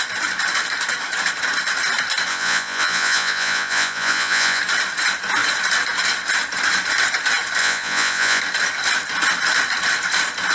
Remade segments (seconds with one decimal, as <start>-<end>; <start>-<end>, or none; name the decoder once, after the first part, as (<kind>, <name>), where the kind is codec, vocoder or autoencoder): 2.3-4.6 (vocoder, Vocos); 7.6-8.4